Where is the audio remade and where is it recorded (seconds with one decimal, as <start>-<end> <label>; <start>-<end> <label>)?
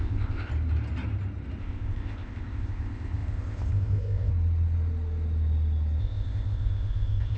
0.0-0.5 remade; 0.5-1.6 recorded; 1.6-4.3 remade; 4.3-6.0 recorded; 6.0-7.4 remade